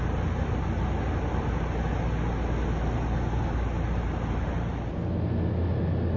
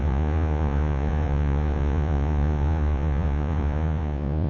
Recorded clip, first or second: first